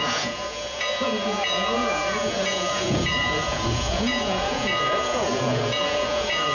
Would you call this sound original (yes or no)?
no